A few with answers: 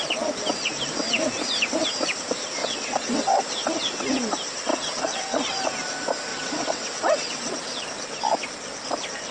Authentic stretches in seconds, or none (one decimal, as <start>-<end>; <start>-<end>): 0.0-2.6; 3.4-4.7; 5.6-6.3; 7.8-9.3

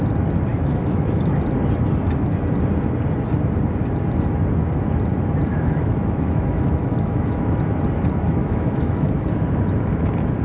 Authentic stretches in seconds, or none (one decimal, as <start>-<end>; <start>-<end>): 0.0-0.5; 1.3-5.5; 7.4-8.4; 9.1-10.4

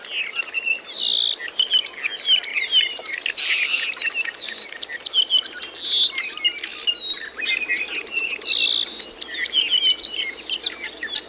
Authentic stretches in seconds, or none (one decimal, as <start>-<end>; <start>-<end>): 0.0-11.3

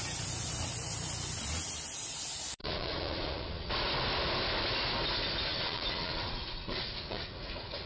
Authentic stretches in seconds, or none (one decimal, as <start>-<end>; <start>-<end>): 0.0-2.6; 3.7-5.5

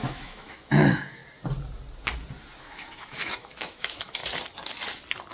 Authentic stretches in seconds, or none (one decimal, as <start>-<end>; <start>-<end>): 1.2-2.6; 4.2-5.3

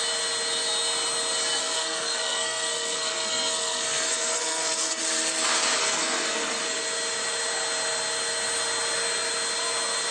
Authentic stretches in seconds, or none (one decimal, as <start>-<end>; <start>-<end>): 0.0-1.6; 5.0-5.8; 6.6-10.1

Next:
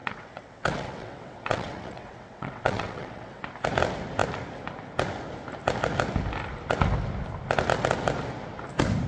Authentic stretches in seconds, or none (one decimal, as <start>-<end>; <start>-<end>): 3.4-9.1